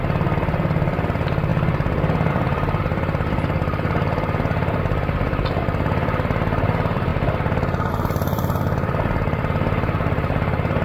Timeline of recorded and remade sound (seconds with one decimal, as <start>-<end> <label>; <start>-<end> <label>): 0.0-1.5 remade; 1.5-2.3 recorded; 2.3-7.1 remade; 7.1-7.9 recorded; 7.9-10.8 remade